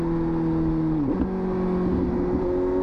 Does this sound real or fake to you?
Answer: real